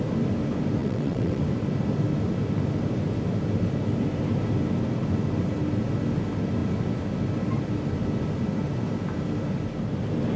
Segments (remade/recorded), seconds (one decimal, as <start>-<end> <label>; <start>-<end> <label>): 0.0-0.8 recorded; 0.8-1.4 remade; 1.4-10.4 recorded